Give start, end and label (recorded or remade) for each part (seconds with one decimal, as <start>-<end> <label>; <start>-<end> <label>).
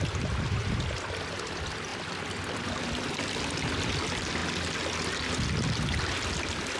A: 0.0-6.8 recorded